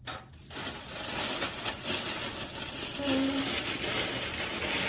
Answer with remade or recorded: recorded